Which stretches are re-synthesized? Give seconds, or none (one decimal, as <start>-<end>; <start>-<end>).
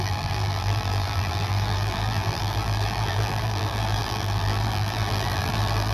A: 0.0-5.9